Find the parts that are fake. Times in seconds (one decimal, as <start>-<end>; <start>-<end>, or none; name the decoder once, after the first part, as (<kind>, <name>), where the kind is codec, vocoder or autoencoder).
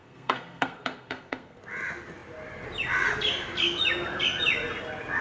0.0-1.6 (codec, SNAC)